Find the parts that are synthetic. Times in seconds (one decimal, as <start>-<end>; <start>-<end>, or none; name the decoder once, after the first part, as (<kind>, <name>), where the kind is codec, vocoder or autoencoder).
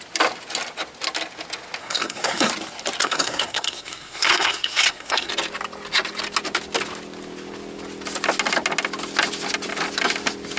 1.8-2.5 (codec, SNAC); 3.0-5.3